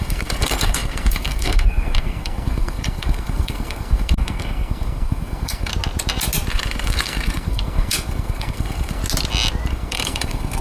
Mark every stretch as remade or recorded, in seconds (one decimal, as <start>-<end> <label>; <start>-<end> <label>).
0.0-5.7 remade; 5.7-6.5 recorded; 6.5-9.0 remade; 9.0-9.7 recorded; 9.7-10.6 remade

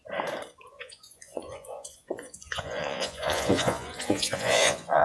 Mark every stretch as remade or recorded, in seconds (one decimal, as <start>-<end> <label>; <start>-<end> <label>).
0.0-0.7 recorded; 0.7-5.0 remade

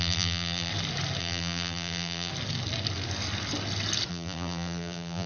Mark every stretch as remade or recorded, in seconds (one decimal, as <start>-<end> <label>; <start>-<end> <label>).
0.0-0.7 remade; 0.7-1.2 recorded; 1.2-2.3 remade; 2.3-4.1 recorded; 4.1-5.3 remade

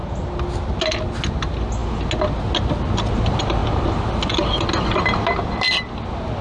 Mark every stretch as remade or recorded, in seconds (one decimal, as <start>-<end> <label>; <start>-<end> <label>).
0.0-6.4 recorded

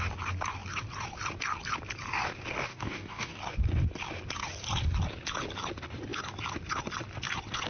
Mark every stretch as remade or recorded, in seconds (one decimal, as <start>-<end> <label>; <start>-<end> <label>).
0.0-2.7 recorded; 2.7-3.4 remade; 3.4-7.7 recorded

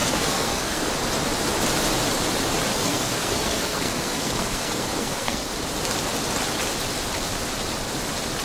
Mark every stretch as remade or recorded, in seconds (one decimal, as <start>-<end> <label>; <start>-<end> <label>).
0.0-0.9 remade; 0.9-2.7 recorded; 2.7-5.5 remade; 5.5-8.4 recorded